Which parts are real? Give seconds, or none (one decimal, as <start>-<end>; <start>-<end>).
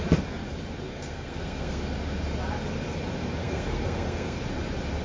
0.0-0.9; 1.8-3.4; 4.4-5.0